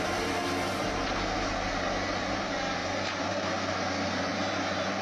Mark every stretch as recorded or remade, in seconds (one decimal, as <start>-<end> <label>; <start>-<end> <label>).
0.0-2.8 recorded; 2.8-3.3 remade; 3.3-4.3 recorded; 4.3-5.0 remade